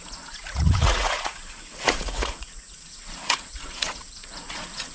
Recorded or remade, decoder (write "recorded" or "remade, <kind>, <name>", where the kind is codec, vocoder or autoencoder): remade, vocoder, Vocos